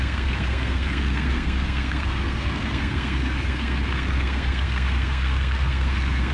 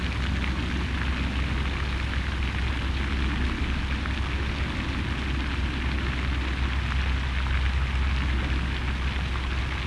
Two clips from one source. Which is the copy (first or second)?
first